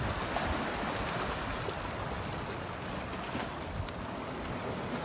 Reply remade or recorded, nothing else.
recorded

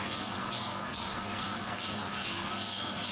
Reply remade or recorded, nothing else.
remade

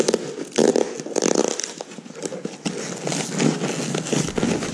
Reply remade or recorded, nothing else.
recorded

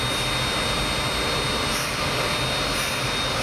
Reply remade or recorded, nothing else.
recorded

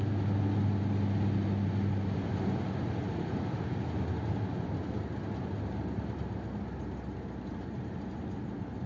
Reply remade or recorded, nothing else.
recorded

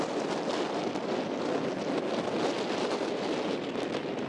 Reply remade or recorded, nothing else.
recorded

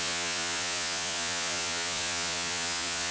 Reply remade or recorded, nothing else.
remade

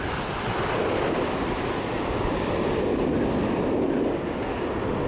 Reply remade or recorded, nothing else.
recorded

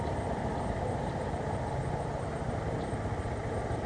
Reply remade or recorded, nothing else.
recorded